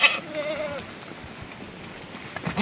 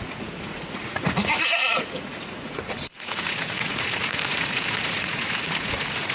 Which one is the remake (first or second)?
second